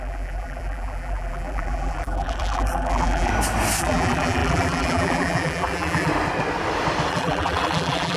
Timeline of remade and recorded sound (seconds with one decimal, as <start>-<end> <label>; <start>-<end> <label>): 0.0-3.3 remade; 3.3-3.8 recorded; 3.8-6.1 remade; 6.1-7.1 recorded; 7.1-8.2 remade